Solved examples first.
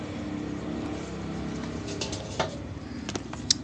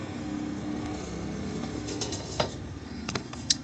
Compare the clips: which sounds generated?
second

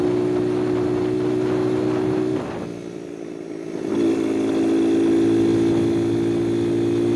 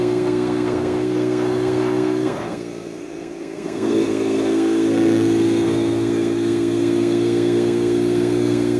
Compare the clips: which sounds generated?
second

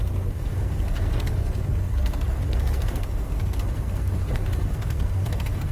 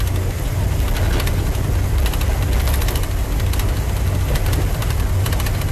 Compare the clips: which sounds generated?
first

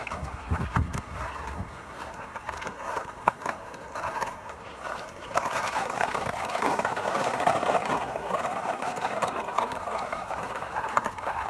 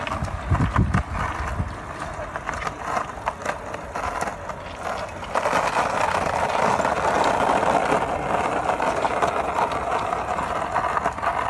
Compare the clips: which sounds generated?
first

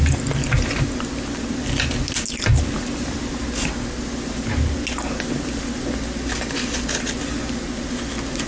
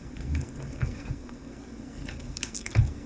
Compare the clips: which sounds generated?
second